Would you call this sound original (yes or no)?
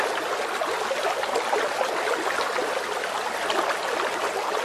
yes